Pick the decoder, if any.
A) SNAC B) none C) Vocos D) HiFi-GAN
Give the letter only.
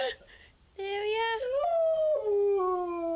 B